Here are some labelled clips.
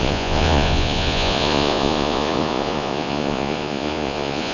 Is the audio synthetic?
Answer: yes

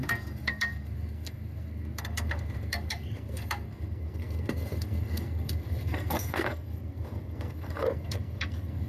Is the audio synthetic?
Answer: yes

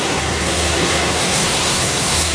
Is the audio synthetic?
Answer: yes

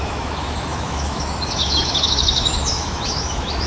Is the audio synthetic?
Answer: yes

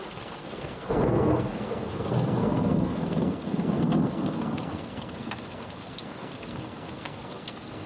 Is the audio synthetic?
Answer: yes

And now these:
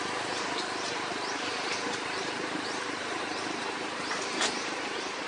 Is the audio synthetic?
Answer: yes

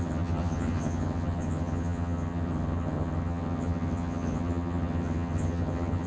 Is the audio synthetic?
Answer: yes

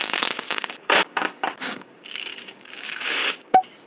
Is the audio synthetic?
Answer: yes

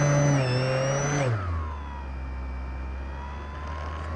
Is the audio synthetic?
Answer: no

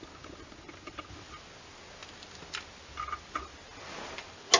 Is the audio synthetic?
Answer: no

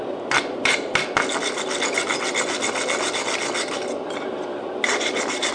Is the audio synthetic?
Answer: no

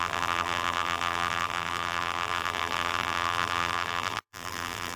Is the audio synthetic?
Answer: yes